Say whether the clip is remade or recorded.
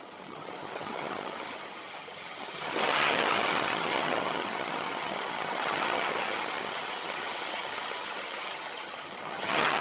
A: remade